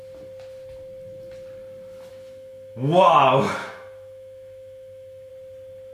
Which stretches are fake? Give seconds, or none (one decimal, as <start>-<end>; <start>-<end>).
2.1-3.2; 3.6-5.3